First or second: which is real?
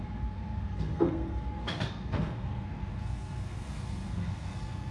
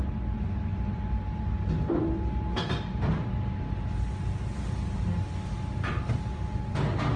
second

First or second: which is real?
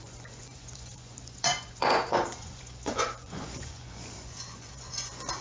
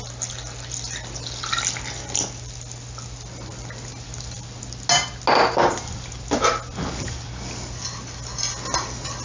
second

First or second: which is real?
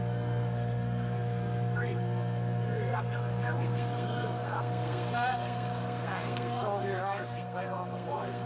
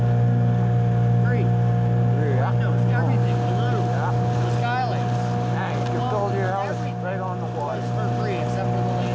second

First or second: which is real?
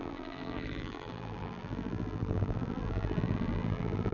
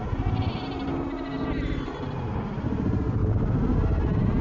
second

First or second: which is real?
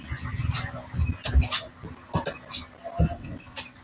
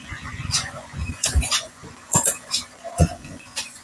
first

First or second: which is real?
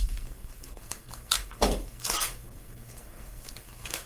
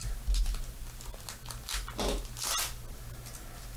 second